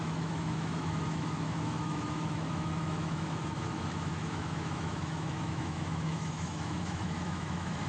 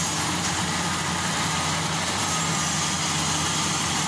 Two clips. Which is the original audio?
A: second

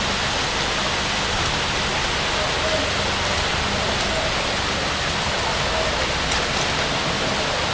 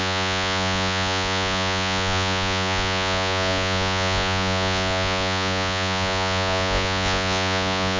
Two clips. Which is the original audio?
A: first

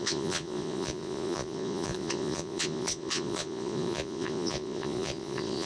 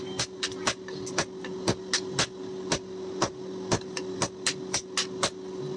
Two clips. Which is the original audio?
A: second